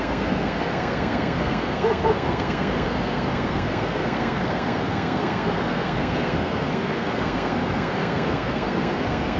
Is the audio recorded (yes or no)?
no